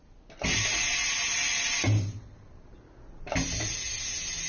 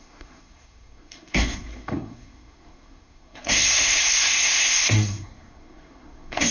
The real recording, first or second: first